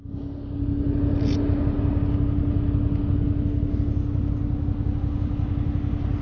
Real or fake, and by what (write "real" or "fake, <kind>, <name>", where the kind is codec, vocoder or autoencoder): real